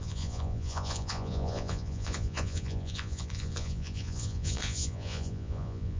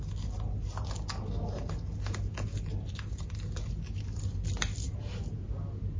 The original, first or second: second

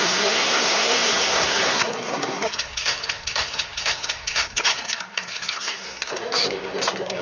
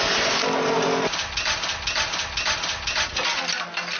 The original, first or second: second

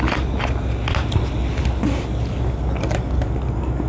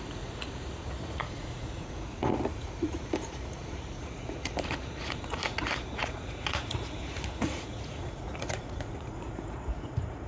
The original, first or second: first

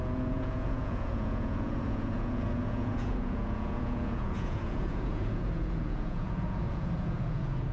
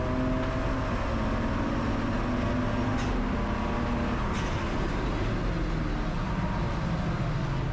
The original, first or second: second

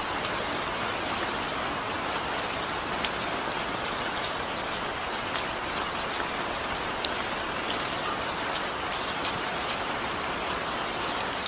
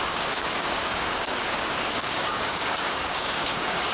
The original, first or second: first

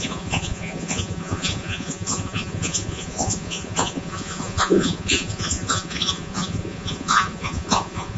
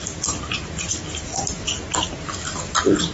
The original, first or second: second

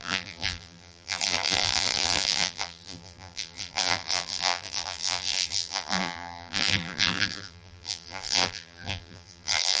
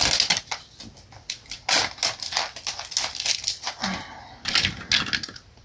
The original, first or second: second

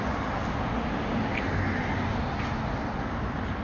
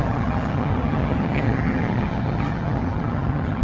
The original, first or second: first